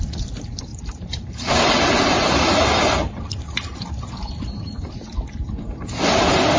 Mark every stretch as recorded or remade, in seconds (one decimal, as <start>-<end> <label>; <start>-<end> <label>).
0.0-0.7 recorded; 0.7-4.0 remade; 4.0-6.6 recorded